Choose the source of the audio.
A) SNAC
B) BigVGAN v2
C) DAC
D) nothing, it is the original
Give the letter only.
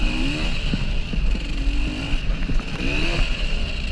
D